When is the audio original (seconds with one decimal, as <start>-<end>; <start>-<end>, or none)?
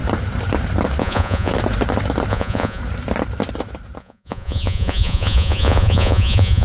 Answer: 0.0-1.0; 1.5-2.3; 2.8-4.0